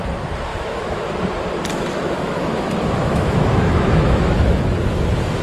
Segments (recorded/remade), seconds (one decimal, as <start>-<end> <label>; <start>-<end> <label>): 0.0-0.5 recorded; 0.5-1.1 remade; 1.1-1.7 recorded; 1.7-4.9 remade; 4.9-5.4 recorded